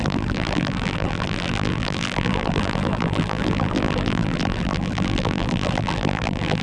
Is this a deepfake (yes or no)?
yes